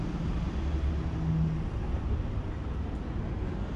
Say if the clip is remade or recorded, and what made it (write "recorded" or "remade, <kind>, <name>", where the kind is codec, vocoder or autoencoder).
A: recorded